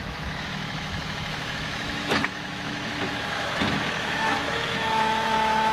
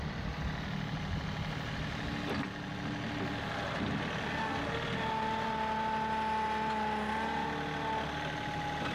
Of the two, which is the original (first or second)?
second